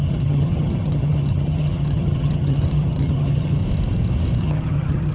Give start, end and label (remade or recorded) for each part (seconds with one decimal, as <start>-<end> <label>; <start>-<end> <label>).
0.0-3.6 remade; 3.6-4.4 recorded; 4.4-5.1 remade